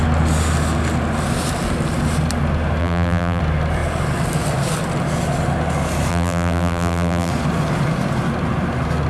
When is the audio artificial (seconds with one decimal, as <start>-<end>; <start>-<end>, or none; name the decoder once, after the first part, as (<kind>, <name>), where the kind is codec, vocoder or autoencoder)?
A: 2.8-3.4 (vocoder, BigVGAN v2); 6.1-7.3